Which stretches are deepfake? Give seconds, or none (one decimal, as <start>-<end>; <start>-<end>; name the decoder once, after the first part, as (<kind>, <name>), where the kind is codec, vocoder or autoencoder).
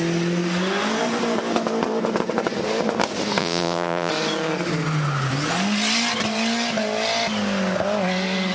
3.4-4.1 (vocoder, Vocos)